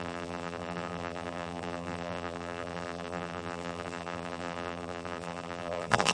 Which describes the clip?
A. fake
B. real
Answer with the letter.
A